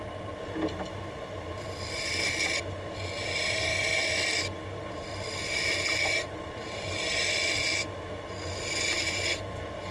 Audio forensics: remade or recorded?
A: recorded